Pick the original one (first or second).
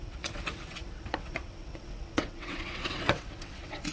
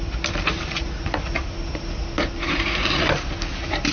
second